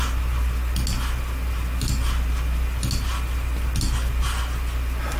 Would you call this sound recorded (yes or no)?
yes